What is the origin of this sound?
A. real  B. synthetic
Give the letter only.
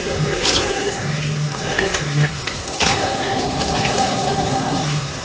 B